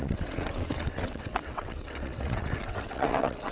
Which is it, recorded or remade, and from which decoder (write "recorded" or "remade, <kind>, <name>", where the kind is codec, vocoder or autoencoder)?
remade, vocoder, WaveNeXt